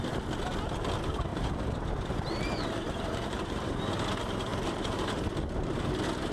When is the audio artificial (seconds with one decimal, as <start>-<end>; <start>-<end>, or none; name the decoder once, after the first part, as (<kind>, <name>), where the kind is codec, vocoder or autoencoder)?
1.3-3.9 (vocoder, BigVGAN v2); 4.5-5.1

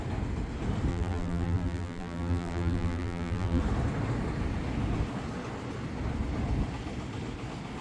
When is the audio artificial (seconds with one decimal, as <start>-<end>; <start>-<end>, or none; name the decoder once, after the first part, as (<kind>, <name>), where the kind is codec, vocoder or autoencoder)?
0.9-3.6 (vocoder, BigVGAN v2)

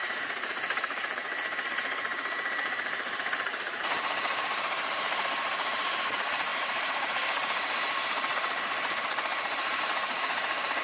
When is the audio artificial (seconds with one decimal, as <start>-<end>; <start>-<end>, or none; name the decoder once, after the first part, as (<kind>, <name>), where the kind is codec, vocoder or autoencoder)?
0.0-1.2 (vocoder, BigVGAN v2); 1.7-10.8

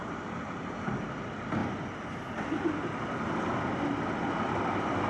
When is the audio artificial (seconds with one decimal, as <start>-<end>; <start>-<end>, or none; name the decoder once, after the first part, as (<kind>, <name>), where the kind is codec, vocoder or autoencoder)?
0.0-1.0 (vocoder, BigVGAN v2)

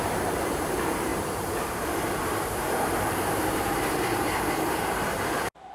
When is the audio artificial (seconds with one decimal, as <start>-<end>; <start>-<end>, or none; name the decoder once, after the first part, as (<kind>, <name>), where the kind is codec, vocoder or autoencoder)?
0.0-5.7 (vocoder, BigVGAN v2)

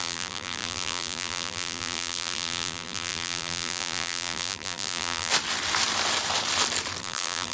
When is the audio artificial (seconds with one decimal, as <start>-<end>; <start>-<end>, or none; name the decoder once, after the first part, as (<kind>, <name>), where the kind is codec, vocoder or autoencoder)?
0.0-5.3 (vocoder, BigVGAN v2); 7.0-7.5

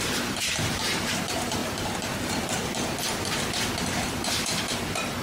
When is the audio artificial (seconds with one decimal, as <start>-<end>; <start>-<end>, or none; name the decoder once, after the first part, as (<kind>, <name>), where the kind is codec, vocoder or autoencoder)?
0.0-1.6 (vocoder, BigVGAN v2); 3.8-5.2

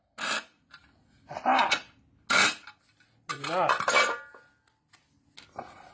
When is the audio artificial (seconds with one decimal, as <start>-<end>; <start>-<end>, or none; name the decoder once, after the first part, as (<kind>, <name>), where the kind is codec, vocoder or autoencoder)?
none